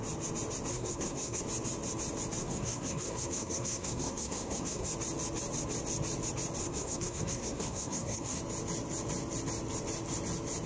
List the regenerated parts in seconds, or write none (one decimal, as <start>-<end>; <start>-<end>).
0.7-1.4; 2.4-4.9; 6.6-8.4